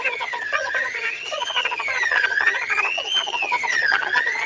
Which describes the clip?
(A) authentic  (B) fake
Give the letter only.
B